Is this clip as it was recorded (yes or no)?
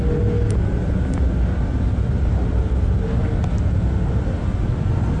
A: yes